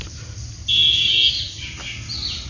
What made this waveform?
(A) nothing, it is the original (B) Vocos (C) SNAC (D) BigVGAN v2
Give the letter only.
A